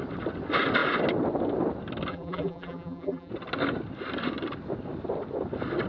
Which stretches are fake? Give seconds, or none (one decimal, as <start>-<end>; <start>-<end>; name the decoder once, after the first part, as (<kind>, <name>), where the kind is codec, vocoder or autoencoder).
2.1-3.3 (vocoder, BigVGAN v2)